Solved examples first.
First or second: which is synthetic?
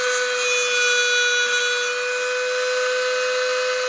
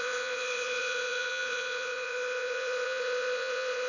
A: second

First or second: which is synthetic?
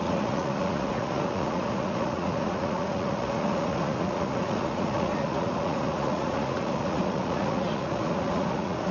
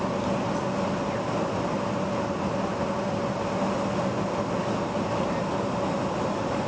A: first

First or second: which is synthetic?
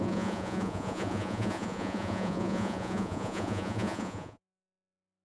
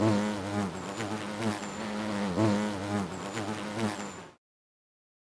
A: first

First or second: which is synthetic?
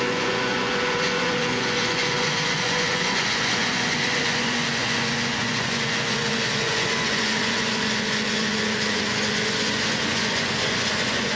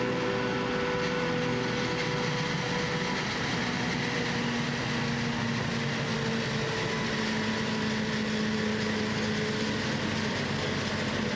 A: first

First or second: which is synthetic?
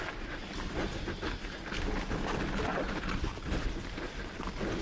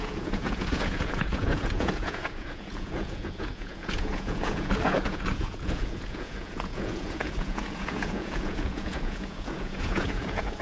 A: second